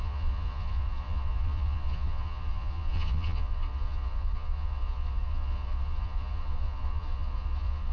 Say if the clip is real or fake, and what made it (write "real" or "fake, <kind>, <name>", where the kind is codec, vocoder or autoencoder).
fake, vocoder, Vocos